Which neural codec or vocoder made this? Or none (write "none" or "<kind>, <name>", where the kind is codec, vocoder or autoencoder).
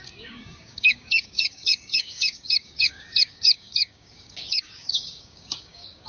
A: codec, DAC